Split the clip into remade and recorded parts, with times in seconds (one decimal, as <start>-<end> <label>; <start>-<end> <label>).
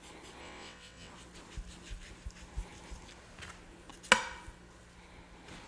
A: 0.0-0.4 recorded; 0.4-1.1 remade; 1.1-5.7 recorded